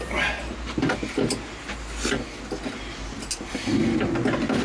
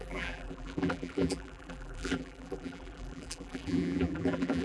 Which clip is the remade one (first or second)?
second